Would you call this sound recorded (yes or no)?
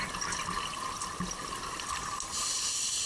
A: yes